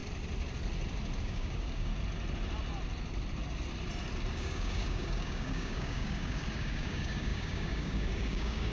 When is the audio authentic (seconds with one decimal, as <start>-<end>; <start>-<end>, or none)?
0.0-1.2; 1.9-4.3